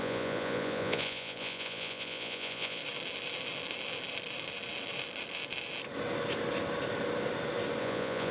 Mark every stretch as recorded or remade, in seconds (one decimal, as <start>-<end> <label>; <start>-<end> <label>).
0.0-2.8 remade; 2.8-7.8 recorded; 7.8-8.3 remade